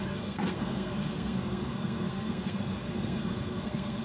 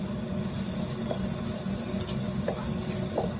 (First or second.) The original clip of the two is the second